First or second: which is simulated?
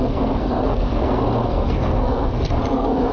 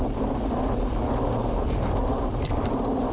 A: first